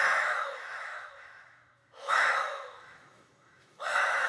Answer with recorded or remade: remade